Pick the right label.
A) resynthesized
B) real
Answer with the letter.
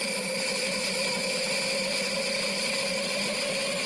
B